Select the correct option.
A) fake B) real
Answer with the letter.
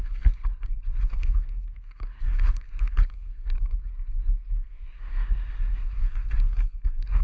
A